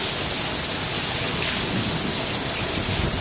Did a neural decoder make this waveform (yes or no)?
no